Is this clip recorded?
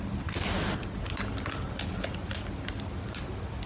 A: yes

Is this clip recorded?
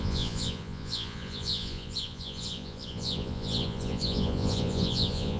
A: no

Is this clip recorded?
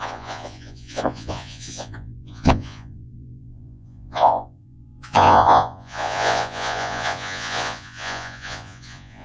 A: no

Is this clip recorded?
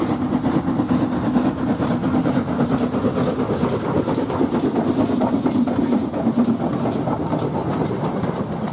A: yes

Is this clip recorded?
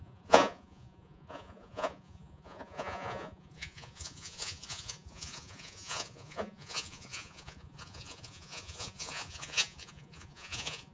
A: no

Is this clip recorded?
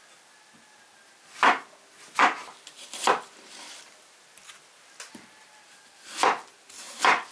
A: yes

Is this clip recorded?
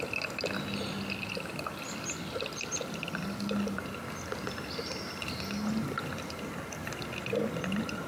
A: yes